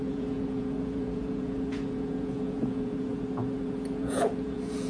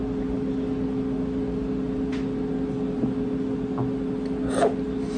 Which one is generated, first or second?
first